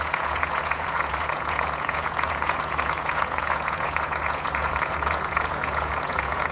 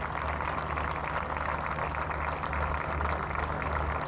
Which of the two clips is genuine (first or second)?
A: second